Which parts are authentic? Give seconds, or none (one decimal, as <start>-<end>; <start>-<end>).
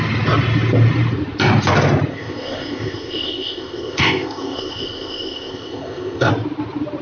0.0-2.1; 6.3-7.0